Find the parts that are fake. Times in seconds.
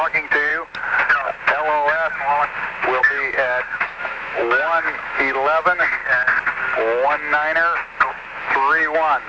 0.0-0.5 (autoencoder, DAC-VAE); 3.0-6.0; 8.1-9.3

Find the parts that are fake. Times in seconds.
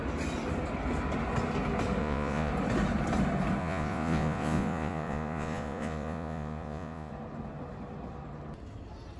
2.0-2.5 (vocoder, Vocos); 3.6-7.1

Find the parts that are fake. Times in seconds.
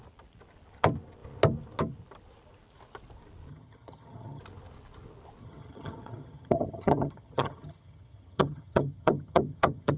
3.5-4.4 (vocoder, HiFi-GAN); 5.4-10.0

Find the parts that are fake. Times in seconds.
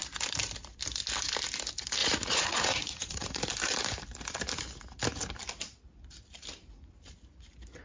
2.0-3.4 (vocoder, Vocos)